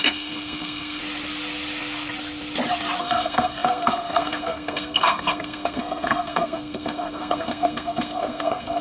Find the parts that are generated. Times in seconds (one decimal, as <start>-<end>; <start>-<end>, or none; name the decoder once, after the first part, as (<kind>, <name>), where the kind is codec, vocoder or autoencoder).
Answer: 0.0-1.0 (codec, SNAC); 3.0-8.8